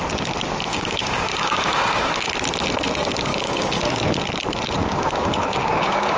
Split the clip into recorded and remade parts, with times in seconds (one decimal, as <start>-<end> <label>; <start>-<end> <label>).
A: 0.0-0.7 recorded; 0.7-2.3 remade; 2.3-3.3 recorded; 3.3-4.1 remade; 4.1-4.8 recorded; 4.8-6.2 remade